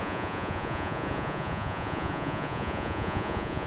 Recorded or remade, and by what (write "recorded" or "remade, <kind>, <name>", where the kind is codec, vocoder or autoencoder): remade, vocoder, Vocos